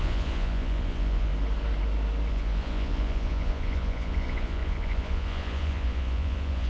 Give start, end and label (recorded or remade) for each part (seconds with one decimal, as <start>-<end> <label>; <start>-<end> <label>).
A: 0.0-1.3 remade; 1.3-2.3 recorded; 2.3-6.7 remade